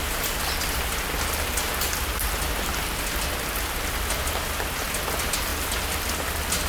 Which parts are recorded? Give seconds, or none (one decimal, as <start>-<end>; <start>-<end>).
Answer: 0.0-6.7